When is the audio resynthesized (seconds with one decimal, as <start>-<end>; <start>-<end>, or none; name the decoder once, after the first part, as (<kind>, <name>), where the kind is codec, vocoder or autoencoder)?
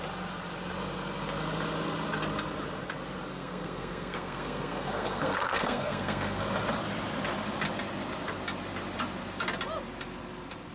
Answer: 3.3-6.4 (codec, SNAC)